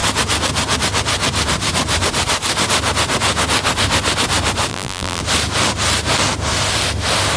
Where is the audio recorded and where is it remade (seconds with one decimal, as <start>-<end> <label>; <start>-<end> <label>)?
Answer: 0.0-4.7 recorded; 4.7-5.2 remade; 5.2-7.4 recorded